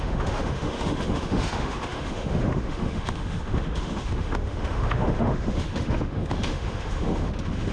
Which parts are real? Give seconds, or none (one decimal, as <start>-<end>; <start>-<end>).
none